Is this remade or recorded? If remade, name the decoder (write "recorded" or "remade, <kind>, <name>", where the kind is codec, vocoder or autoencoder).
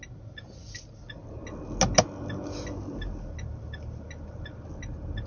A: recorded